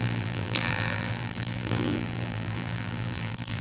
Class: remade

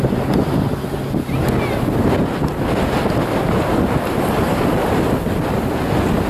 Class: recorded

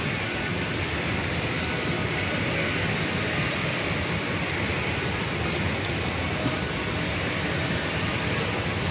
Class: recorded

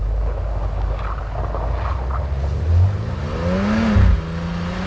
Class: recorded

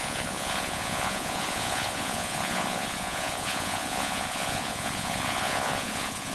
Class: remade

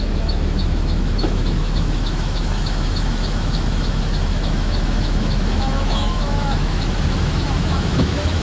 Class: remade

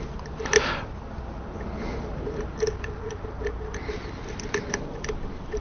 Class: recorded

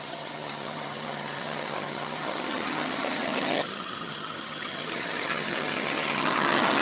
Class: remade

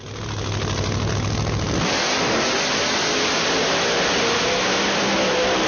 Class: recorded